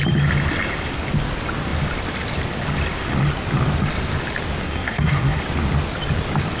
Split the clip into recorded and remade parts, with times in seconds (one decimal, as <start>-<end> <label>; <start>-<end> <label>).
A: 0.0-4.6 recorded; 4.6-5.4 remade; 5.4-6.6 recorded